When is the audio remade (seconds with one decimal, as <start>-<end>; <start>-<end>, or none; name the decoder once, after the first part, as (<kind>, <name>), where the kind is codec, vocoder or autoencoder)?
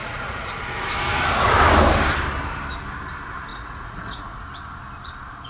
0.0-0.5 (vocoder, Vocos); 3.5-4.4